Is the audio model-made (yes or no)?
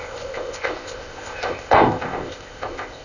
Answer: yes